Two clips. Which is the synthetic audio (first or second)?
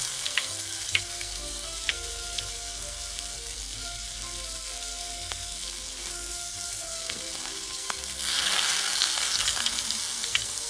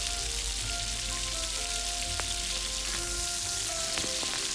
first